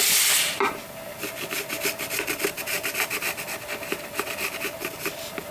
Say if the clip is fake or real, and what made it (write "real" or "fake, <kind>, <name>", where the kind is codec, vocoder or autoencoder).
real